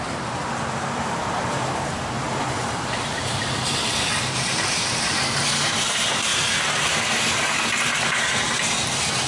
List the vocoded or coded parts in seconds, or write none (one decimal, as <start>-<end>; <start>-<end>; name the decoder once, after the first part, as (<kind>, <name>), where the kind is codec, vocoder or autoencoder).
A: 0.0-9.3 (vocoder, BigVGAN v2)